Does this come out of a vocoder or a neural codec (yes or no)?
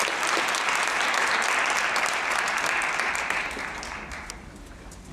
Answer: no